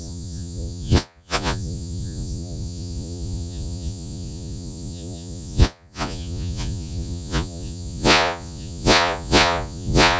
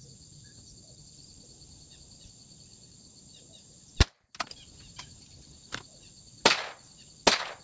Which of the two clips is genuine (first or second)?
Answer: second